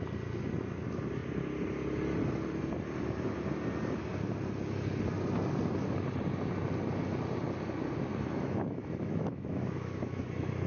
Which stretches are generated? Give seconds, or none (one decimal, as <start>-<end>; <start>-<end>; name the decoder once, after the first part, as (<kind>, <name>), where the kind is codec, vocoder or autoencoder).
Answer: 8.1-10.7 (autoencoder, DAC-VAE)

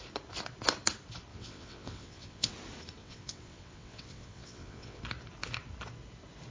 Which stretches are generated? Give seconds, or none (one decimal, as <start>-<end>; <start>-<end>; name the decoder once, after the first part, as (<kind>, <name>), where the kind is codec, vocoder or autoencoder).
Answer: 1.3-2.5 (vocoder, WaveNeXt); 3.0-5.0